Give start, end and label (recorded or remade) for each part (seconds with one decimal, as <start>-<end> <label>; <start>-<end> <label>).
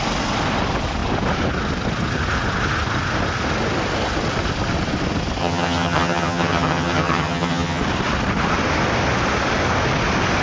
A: 0.0-5.4 recorded; 5.4-7.8 remade; 7.8-10.4 recorded